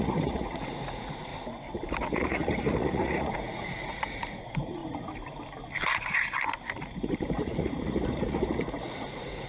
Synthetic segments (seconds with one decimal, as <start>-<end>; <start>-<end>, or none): 0.0-1.3; 2.0-4.8; 6.8-9.5